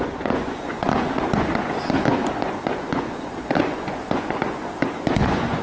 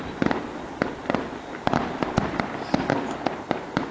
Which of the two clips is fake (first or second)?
first